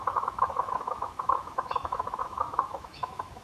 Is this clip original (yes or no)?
no